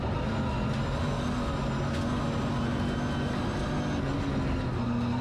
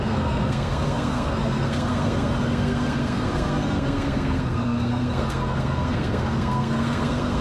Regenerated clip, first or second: second